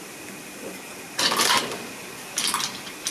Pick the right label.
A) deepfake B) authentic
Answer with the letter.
B